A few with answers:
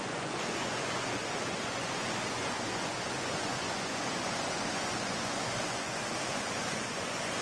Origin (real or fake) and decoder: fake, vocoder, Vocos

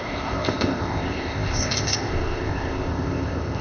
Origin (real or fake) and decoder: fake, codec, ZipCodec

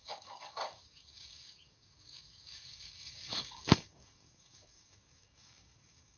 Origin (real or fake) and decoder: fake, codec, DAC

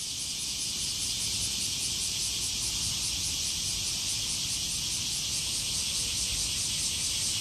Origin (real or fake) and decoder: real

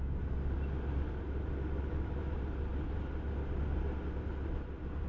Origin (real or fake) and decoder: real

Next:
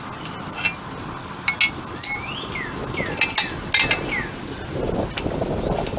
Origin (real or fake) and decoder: real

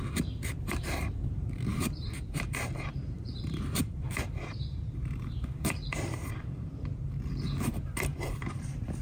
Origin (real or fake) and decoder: fake, vocoder, BigVGAN v2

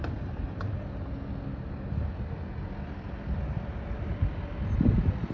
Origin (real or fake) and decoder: real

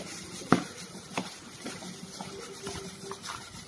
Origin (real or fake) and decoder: real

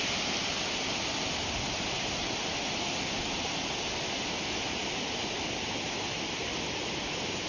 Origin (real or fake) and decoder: real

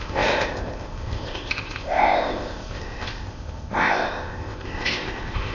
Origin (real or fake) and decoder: fake, codec, ZipCodec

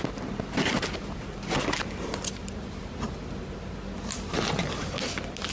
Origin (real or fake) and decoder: real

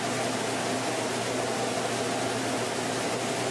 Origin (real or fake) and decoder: real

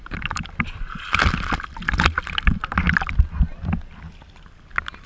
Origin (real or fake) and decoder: real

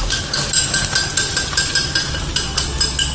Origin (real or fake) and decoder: real